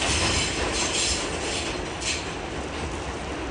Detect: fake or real real